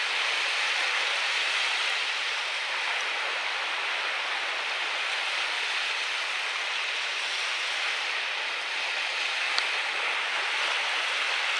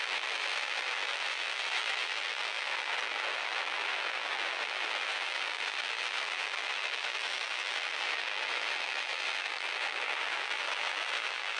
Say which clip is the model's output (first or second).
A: second